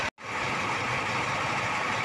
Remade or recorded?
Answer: recorded